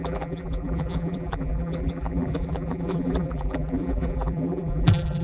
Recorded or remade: remade